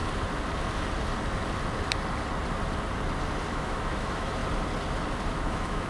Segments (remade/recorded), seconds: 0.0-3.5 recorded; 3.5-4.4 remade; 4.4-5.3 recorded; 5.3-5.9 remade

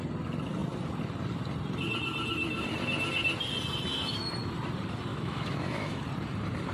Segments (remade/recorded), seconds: 0.0-5.1 recorded; 5.1-6.0 remade; 6.0-6.7 recorded

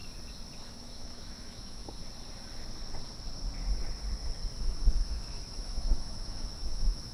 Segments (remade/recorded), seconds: 0.0-0.7 recorded; 0.7-1.8 remade; 1.8-4.6 recorded; 4.6-7.1 remade

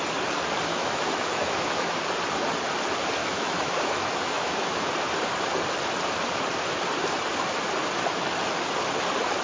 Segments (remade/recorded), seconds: 0.0-0.7 recorded; 0.7-2.0 remade; 2.0-3.2 recorded; 3.2-4.9 remade; 4.9-9.4 recorded